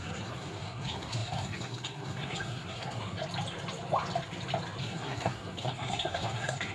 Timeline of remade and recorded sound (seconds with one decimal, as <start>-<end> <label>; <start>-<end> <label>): 0.0-3.2 remade; 3.2-4.8 recorded; 4.8-6.7 remade